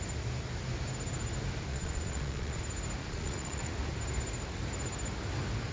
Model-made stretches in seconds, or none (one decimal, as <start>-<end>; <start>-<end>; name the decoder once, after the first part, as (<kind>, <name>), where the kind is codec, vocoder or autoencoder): 1.7-2.6 (vocoder, Vocos); 3.0-3.7